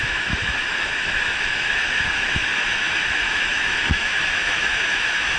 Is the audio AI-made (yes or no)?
yes